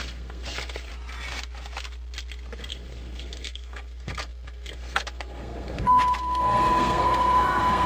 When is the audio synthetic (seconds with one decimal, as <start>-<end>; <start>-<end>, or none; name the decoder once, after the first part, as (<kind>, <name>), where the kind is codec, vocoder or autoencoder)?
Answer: 0.0-0.9 (codec, SNAC); 2.7-7.9